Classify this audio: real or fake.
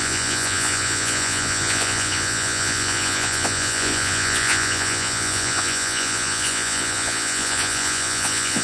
fake